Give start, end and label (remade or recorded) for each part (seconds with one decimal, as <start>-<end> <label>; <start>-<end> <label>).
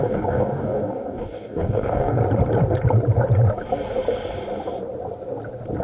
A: 0.0-2.2 remade; 2.2-5.8 recorded